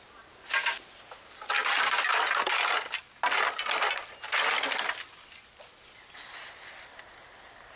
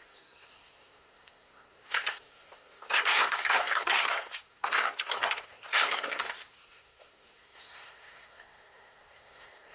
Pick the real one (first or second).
first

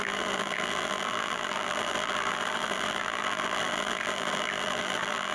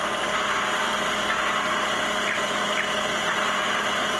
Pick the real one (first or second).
second